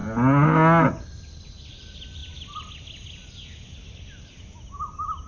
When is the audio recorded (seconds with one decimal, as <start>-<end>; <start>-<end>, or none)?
0.0-5.3